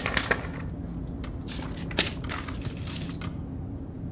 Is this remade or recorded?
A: recorded